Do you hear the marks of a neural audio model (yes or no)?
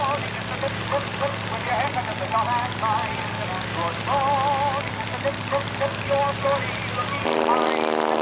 no